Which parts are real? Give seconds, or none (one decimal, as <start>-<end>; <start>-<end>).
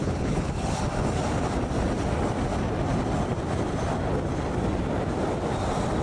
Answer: 0.8-6.0